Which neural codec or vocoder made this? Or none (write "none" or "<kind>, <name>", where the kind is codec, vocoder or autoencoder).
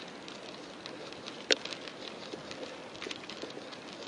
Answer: none